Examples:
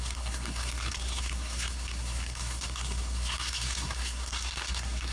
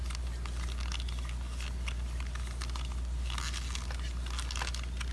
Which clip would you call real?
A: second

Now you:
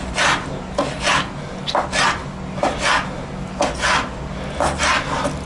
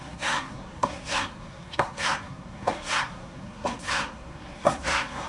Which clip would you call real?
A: first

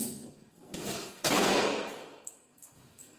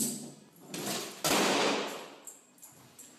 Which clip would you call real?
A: second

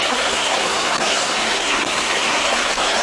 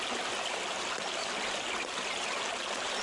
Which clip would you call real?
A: second